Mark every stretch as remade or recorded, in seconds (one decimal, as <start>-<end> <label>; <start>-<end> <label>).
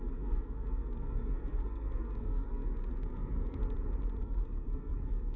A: 0.0-3.6 remade; 3.6-4.2 recorded; 4.2-5.4 remade